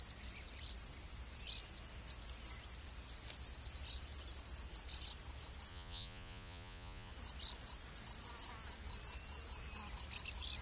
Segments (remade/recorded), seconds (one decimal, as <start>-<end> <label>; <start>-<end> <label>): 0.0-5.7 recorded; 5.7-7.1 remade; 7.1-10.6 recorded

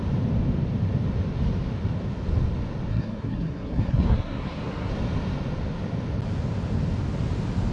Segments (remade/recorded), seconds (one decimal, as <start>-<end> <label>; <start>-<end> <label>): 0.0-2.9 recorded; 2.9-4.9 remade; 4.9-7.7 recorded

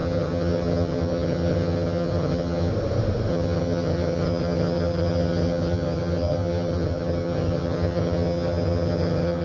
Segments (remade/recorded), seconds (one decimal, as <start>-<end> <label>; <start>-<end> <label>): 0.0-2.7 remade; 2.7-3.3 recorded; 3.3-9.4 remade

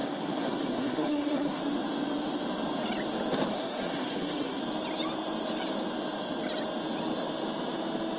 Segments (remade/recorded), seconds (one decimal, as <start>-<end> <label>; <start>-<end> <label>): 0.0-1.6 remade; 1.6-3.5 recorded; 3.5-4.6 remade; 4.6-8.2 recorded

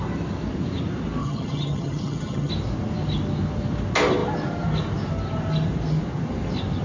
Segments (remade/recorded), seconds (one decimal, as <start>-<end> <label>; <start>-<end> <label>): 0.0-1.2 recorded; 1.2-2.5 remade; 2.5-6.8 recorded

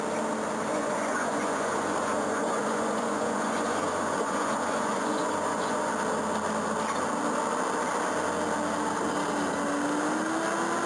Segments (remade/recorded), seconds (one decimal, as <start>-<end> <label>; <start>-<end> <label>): 0.0-0.7 recorded; 0.7-5.9 remade; 5.9-10.9 recorded